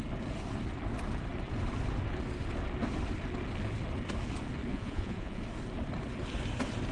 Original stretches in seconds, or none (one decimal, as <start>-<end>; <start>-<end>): 0.0-4.7; 5.4-6.9